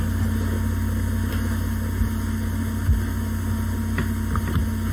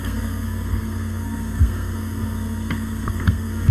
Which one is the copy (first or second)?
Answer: second